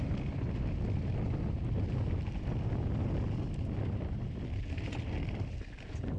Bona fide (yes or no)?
yes